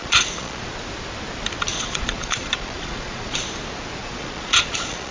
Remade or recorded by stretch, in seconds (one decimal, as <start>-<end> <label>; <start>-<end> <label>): 0.0-0.6 remade; 0.6-1.7 recorded; 1.7-3.4 remade; 3.4-4.0 recorded; 4.0-5.1 remade